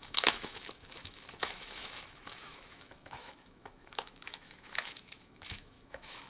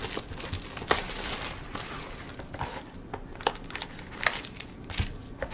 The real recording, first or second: second